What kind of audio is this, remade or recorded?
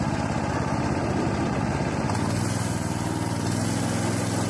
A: recorded